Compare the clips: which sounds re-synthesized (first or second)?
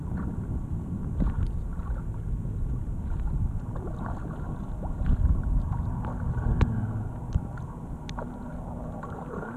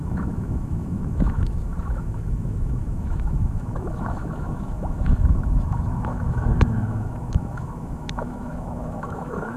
second